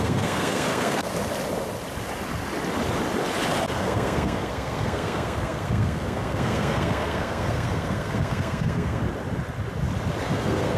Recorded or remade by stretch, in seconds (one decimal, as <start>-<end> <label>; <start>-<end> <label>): 0.0-1.1 remade; 1.1-3.7 recorded; 3.7-9.0 remade; 9.0-10.2 recorded; 10.2-10.8 remade